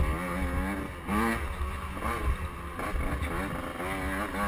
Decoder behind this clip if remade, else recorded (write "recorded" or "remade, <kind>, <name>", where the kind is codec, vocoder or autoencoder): recorded